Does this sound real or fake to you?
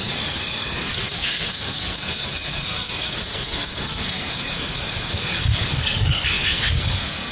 fake